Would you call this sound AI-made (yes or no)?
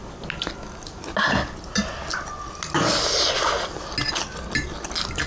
no